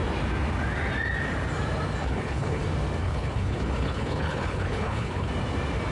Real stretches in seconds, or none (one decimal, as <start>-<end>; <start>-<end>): 0.0-2.0; 2.6-3.0; 5.3-5.9